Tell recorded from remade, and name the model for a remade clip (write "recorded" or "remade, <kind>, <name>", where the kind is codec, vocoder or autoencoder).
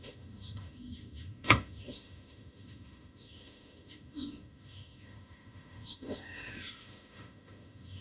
remade, autoencoder, DAC-VAE